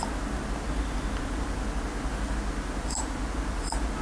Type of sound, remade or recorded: recorded